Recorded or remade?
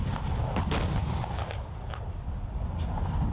recorded